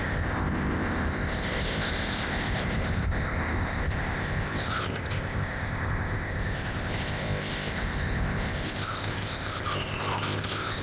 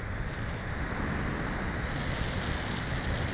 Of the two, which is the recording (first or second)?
second